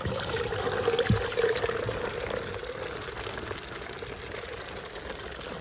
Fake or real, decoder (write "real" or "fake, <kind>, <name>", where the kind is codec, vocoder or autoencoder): real